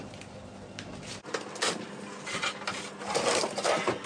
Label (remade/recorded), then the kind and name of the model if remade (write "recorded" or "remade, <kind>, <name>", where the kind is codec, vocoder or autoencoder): recorded